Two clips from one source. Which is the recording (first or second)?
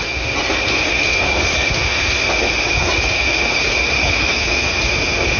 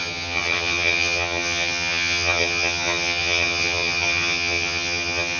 first